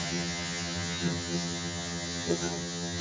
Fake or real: fake